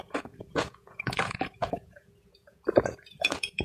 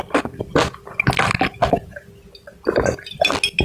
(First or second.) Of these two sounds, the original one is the second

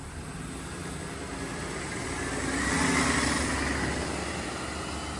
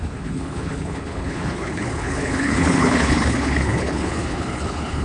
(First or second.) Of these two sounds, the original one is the first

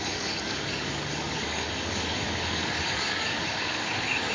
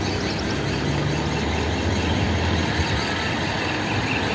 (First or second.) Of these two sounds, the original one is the second